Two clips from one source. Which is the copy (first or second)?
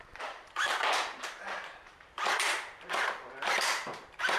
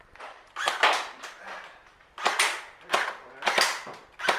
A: first